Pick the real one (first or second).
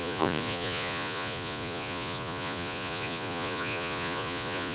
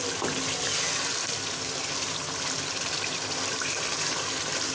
second